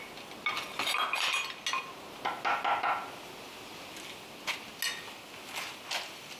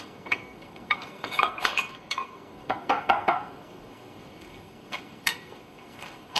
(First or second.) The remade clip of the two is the second